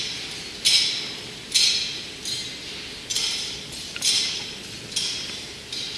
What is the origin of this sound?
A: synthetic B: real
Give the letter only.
B